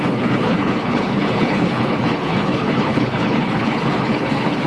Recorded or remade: remade